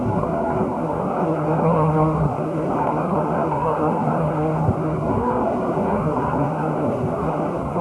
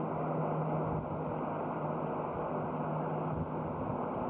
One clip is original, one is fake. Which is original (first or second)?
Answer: second